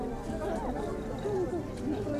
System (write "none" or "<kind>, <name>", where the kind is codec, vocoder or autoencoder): none